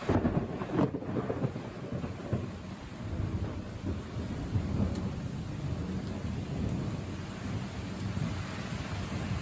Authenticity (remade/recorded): recorded